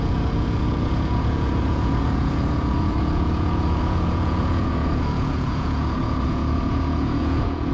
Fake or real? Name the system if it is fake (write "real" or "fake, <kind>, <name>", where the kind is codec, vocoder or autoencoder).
fake, vocoder, Vocos